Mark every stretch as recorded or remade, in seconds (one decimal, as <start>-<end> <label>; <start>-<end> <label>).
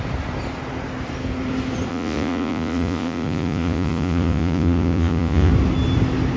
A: 0.0-1.9 recorded; 1.9-5.5 remade; 5.5-6.4 recorded